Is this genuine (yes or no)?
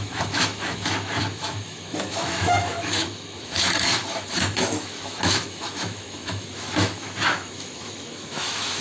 no